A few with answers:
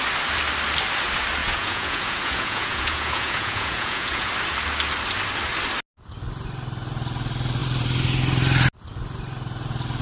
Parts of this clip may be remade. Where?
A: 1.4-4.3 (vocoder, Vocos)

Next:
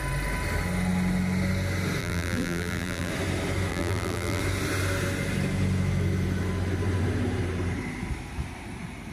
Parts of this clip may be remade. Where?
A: 2.0-3.1 (vocoder, BigVGAN v2); 3.7-4.4

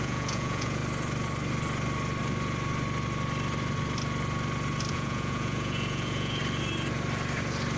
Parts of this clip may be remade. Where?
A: 0.0-0.8 (vocoder, Vocos); 4.9-6.4

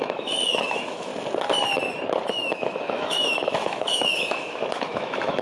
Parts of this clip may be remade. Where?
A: 0.0-1.1 (autoencoder, DAC-VAE); 2.3-5.4